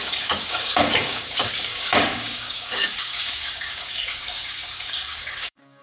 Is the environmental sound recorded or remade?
remade